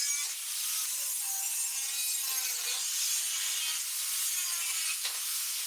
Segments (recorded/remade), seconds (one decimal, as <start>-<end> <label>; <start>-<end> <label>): 0.0-4.9 recorded; 4.9-5.7 remade